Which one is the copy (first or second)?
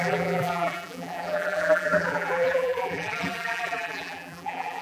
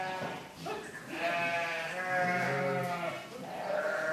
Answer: first